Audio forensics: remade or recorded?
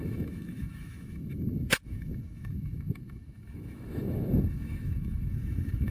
remade